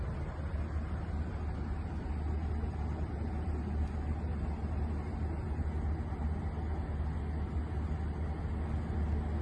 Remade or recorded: recorded